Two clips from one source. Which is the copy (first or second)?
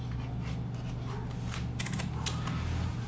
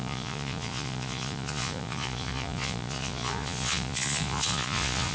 second